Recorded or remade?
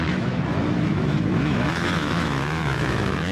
remade